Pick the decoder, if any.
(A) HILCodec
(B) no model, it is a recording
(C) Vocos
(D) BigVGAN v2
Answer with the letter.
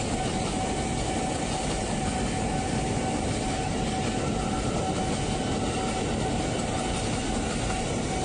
B